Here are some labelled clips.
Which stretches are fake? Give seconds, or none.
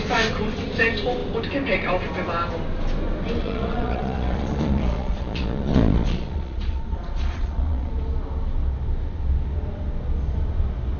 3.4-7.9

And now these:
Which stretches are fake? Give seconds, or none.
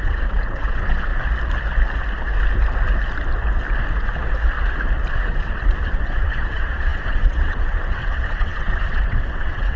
0.0-1.1; 5.1-9.8